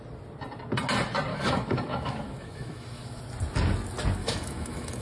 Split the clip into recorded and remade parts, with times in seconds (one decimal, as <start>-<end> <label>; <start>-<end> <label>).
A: 0.0-1.3 recorded; 1.3-3.2 remade; 3.2-4.2 recorded; 4.2-5.0 remade